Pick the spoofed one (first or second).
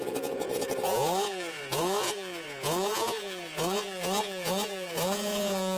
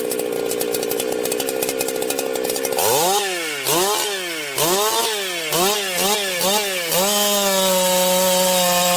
first